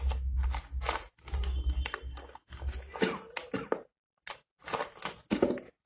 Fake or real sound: real